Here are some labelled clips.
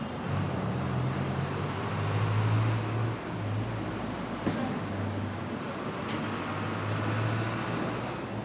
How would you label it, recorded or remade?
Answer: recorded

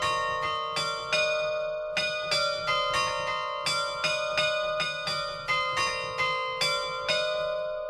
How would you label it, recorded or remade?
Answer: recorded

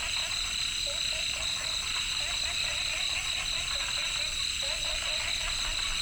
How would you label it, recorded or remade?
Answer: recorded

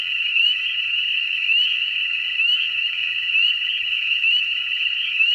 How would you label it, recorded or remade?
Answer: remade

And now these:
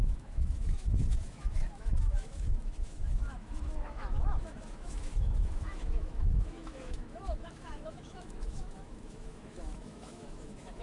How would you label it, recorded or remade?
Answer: remade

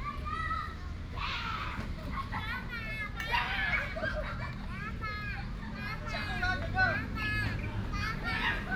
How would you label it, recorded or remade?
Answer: recorded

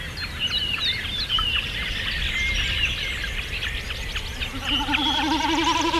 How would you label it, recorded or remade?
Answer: recorded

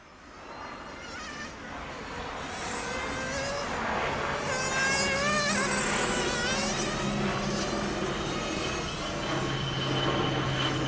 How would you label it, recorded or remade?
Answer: recorded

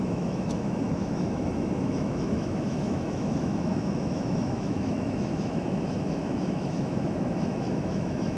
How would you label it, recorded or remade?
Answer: remade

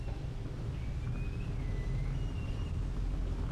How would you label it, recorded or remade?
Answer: recorded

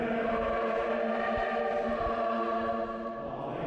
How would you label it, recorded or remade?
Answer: recorded